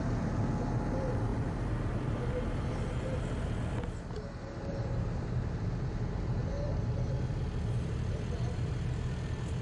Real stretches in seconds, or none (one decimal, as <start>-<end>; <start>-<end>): 0.0-1.3; 2.3-4.8; 6.7-9.6